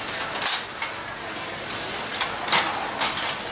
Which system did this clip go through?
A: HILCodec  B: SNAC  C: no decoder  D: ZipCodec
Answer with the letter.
C